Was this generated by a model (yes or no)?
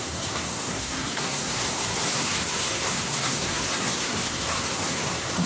yes